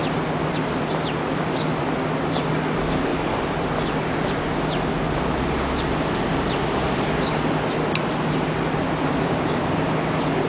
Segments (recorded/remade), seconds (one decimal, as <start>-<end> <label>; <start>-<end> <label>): 0.0-10.5 recorded